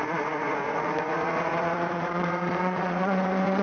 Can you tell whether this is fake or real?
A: fake